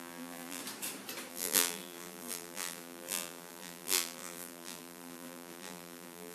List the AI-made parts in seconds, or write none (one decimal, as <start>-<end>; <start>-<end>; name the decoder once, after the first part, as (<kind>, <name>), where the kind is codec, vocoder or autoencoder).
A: 0.0-0.6 (vocoder, BigVGAN v2); 1.3-6.3